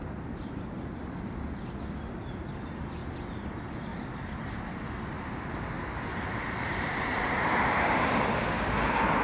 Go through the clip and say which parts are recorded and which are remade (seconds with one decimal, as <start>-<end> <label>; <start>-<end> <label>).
0.0-3.0 recorded; 3.0-3.5 remade; 3.5-3.9 recorded; 3.9-8.2 remade; 8.2-9.2 recorded